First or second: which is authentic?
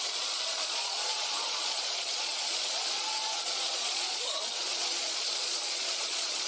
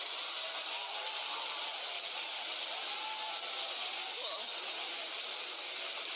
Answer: second